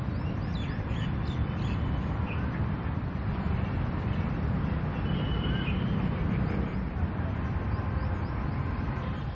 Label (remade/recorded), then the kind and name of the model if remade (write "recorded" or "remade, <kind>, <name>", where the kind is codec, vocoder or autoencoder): remade, vocoder, BigVGAN v2